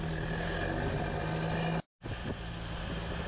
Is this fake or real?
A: real